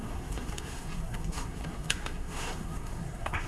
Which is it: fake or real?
fake